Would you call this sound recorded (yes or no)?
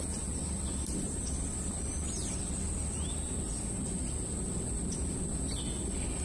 yes